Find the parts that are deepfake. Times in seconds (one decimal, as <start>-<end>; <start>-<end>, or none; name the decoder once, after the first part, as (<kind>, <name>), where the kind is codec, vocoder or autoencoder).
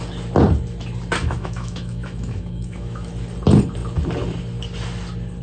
1.2-3.1 (autoencoder, DAC-VAE)